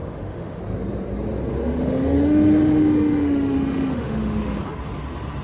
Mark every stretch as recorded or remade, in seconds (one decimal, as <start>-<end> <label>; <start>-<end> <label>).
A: 0.0-0.6 remade; 0.6-1.5 recorded; 1.5-4.6 remade; 4.6-5.4 recorded